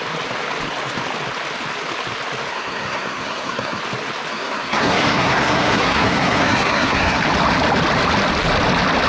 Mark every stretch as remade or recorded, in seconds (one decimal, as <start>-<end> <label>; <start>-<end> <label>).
0.0-2.5 recorded; 2.5-3.8 remade; 3.8-4.3 recorded; 4.3-7.2 remade; 7.2-9.1 recorded